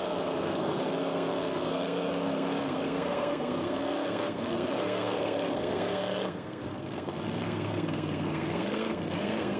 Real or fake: fake